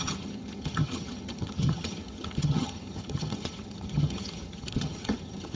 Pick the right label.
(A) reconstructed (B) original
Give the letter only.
A